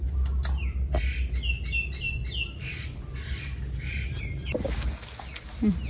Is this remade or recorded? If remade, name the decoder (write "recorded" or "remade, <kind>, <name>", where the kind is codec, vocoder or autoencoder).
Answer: recorded